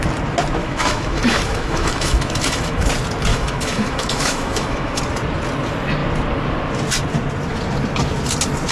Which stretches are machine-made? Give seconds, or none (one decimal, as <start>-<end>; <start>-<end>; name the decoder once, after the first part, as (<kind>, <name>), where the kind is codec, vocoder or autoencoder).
0.6-2.9 (autoencoder, DAC-VAE); 3.3-5.0